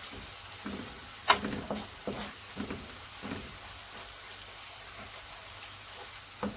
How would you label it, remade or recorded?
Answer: recorded